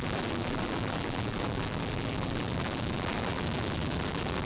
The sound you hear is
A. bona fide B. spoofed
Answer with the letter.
B